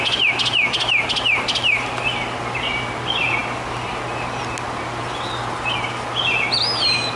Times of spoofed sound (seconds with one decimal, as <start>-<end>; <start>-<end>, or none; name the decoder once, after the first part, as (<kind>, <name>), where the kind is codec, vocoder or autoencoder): none